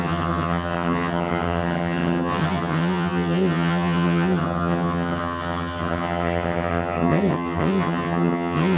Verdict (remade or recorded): remade